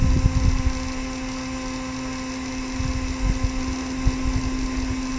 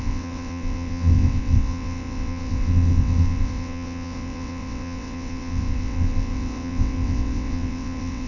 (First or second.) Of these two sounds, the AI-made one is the second